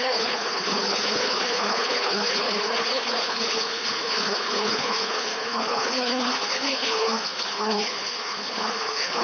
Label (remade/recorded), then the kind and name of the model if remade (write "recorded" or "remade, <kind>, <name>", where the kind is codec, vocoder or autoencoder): remade, codec, HILCodec